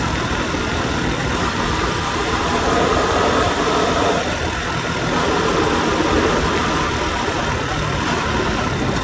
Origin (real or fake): fake